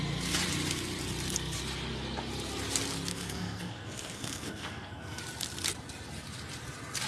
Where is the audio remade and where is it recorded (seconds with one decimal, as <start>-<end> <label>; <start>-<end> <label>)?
0.0-3.1 recorded; 3.1-5.2 remade; 5.2-7.1 recorded